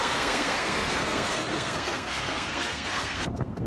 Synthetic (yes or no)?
yes